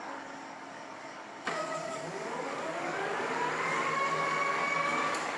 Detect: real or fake fake